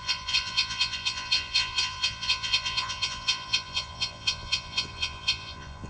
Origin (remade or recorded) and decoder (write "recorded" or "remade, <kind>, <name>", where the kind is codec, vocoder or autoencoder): remade, vocoder, Vocos